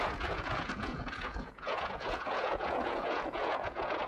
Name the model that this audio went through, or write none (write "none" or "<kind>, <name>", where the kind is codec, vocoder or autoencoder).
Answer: vocoder, Vocos